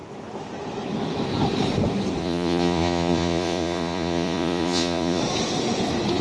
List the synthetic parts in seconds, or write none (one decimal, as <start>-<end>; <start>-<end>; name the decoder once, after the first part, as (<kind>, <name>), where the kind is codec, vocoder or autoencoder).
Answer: 2.2-5.2 (vocoder, Vocos)